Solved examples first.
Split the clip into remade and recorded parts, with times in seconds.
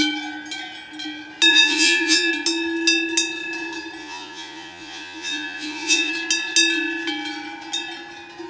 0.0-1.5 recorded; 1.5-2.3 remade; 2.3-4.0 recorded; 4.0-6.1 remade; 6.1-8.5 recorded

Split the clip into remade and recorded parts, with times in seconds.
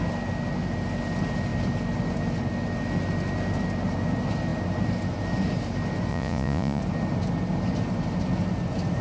0.0-6.1 recorded; 6.1-6.8 remade; 6.8-9.0 recorded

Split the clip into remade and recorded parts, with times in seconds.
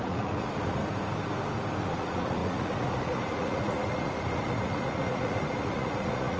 0.0-0.8 remade; 0.8-1.8 recorded; 1.8-6.4 remade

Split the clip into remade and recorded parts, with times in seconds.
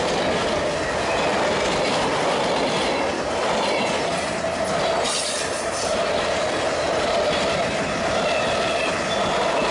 0.0-9.7 recorded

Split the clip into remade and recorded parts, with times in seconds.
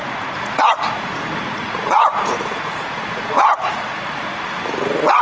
0.0-5.2 remade